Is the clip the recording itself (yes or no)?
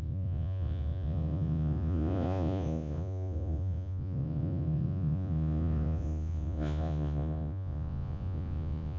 no